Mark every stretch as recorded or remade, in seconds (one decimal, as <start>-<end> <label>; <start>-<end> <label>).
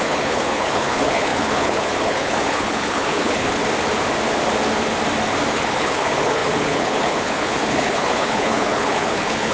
0.0-3.6 remade; 3.6-5.5 recorded; 5.5-9.5 remade